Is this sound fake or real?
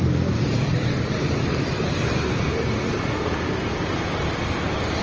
fake